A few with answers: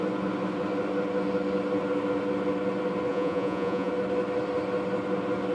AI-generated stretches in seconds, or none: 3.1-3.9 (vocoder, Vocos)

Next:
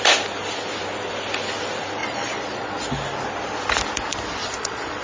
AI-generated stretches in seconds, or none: 2.0-2.9 (vocoder, Vocos); 4.4-5.0

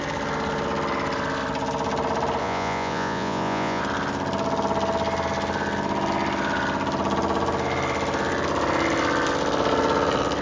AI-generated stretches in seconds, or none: 2.4-3.8 (vocoder, Vocos)

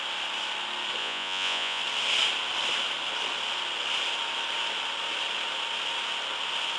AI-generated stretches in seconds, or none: 1.0-1.8 (vocoder, Vocos)

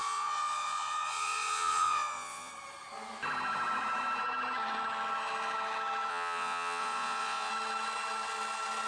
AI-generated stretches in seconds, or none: 0.0-2.5 (vocoder, Vocos); 6.1-7.5

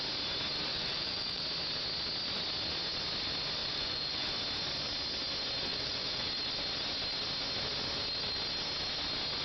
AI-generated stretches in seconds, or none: 0.7-1.4 (vocoder, Vocos); 3.6-4.4; 5.7-6.3

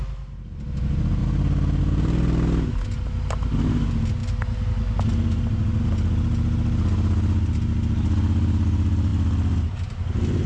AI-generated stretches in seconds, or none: none

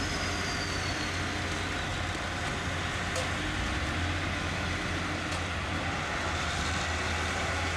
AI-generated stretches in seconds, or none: none